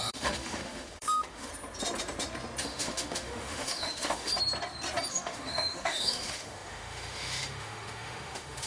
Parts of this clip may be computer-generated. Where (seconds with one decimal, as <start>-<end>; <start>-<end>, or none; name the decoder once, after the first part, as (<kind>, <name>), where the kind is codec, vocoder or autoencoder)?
0.0-1.5 (autoencoder, DAC-VAE); 2.6-4.3; 5.1-8.7

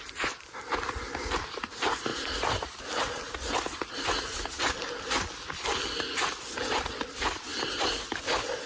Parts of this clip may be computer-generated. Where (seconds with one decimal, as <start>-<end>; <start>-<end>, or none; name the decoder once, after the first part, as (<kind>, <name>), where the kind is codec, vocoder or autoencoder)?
none

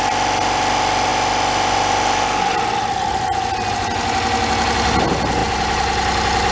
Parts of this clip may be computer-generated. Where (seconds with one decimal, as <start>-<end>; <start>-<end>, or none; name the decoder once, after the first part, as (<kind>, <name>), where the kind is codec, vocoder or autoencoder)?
none

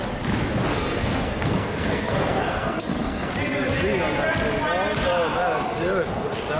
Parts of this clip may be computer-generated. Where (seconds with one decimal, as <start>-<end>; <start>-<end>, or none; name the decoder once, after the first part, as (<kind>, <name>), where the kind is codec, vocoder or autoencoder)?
0.7-3.3 (codec, SNAC)